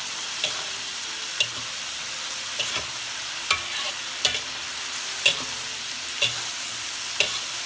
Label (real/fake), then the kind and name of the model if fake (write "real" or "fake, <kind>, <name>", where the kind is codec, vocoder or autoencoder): real